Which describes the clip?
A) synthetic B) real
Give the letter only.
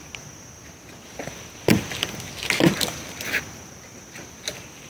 B